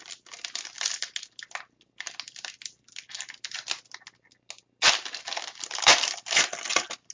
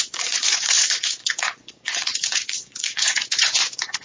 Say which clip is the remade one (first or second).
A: second